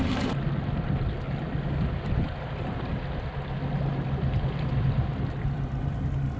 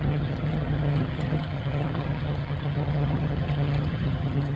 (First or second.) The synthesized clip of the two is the second